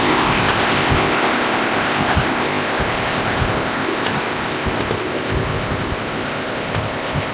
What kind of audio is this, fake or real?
fake